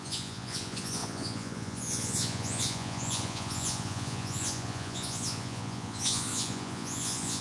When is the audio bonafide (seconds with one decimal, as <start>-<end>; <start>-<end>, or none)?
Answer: none